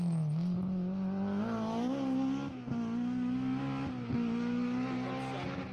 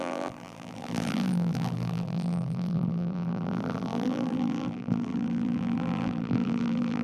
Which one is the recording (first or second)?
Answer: first